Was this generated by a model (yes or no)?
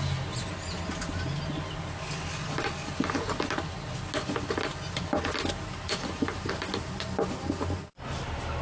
no